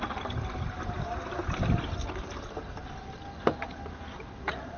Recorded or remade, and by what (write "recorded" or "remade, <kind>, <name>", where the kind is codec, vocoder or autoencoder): recorded